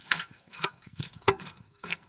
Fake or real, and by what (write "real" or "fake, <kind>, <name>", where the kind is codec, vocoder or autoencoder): fake, codec, SNAC